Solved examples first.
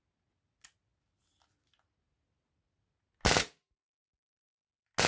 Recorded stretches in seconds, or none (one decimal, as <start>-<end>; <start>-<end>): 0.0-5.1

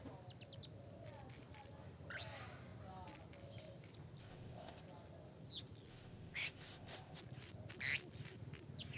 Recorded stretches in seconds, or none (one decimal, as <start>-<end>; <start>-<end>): 0.0-4.2; 4.8-5.9; 7.2-9.0

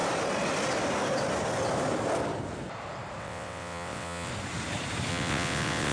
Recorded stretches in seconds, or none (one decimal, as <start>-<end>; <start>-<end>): 0.0-3.2; 4.3-5.1

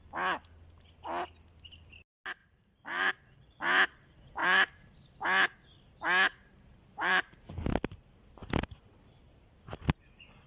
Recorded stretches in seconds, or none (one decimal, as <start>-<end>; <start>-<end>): 0.0-2.4; 3.1-4.4; 4.9-6.3; 7.5-10.5